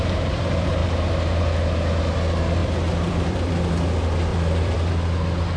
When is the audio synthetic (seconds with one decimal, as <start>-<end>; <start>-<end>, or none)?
2.6-3.5; 4.3-4.9